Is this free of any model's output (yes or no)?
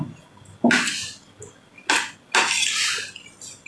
yes